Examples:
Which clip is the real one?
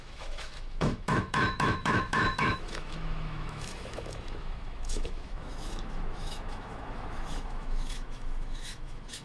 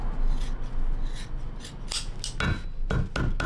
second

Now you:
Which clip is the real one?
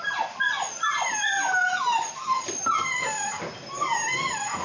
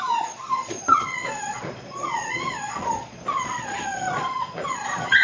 first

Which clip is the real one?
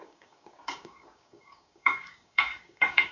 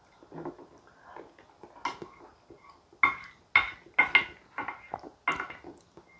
second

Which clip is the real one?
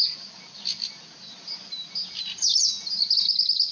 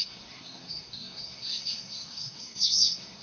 first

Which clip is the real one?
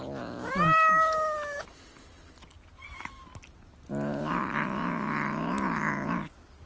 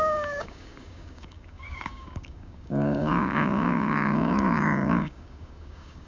first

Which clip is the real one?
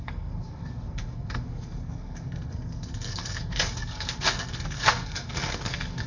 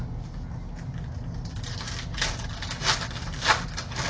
second